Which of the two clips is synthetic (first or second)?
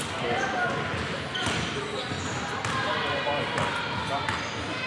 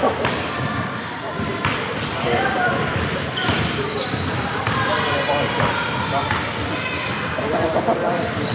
second